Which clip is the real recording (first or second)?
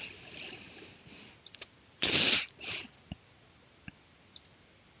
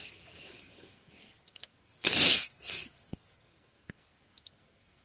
first